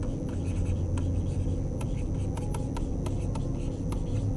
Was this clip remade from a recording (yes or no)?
no